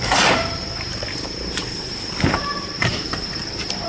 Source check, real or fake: fake